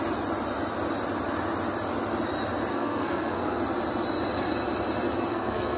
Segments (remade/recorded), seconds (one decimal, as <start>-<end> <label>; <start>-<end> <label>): 0.0-2.7 recorded; 2.7-3.6 remade; 3.6-5.3 recorded; 5.3-5.8 remade